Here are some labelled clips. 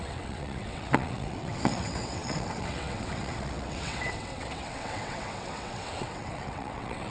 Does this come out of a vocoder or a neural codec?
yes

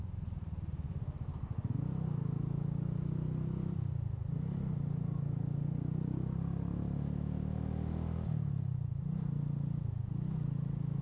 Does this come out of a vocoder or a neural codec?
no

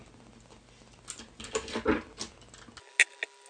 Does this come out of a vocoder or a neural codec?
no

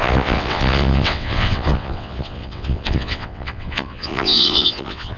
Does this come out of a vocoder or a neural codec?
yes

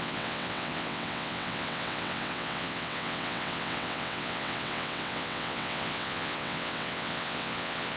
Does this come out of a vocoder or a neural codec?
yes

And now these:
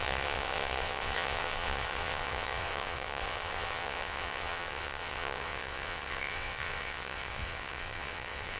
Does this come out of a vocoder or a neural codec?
yes